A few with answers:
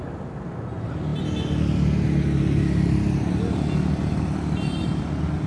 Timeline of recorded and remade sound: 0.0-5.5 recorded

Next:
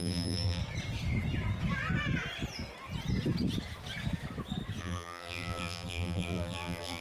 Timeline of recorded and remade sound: 0.0-0.6 remade; 0.6-4.8 recorded; 4.8-7.0 remade

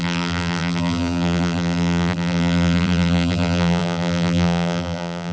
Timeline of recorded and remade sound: 0.0-5.3 remade

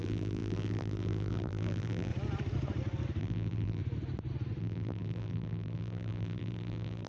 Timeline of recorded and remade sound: 0.0-2.1 remade; 2.1-3.2 recorded; 3.2-3.8 remade; 3.8-4.6 recorded; 4.6-7.1 remade

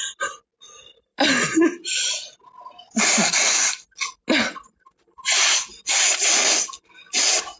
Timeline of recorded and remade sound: 0.0-7.6 recorded